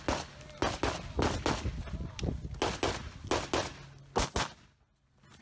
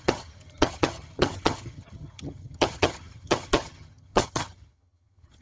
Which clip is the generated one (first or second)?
second